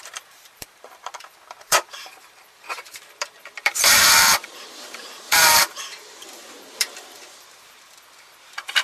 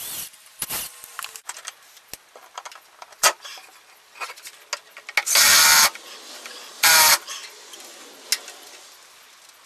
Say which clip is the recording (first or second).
second